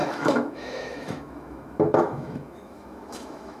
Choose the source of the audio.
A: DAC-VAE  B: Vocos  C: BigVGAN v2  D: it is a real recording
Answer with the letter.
A